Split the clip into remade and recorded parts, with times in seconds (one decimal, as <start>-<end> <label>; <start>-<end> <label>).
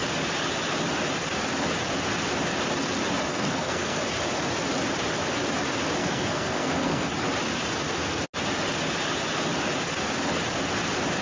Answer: 0.0-3.3 recorded; 3.3-4.0 remade; 4.0-6.0 recorded; 6.0-7.1 remade; 7.1-11.2 recorded